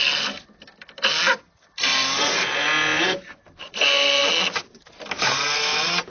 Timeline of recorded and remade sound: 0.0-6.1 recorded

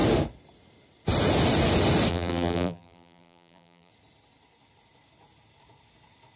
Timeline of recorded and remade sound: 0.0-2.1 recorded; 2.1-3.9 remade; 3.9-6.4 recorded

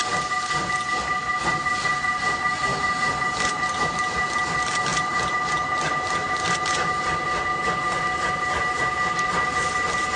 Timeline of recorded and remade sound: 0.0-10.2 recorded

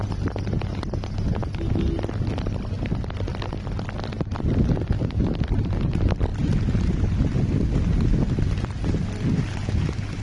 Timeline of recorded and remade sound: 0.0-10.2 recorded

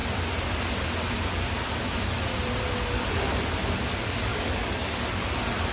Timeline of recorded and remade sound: 0.0-4.3 recorded; 4.3-5.2 remade; 5.2-5.7 recorded